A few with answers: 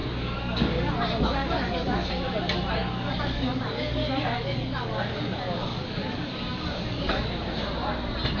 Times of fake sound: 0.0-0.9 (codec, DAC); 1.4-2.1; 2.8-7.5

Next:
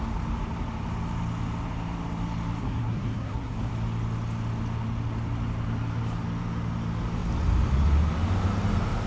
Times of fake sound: 2.6-3.7 (codec, SNAC)

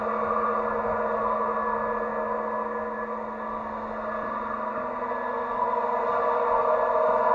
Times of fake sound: none